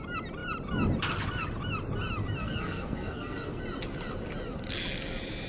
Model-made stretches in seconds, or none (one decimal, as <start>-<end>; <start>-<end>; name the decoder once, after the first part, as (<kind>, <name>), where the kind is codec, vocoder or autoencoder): 2.4-3.6 (codec, SNAC)